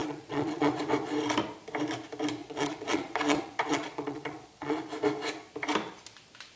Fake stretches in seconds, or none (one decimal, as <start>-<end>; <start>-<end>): 0.0-0.8; 2.4-4.8